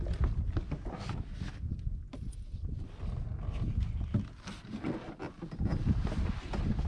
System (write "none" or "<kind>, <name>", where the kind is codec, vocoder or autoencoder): none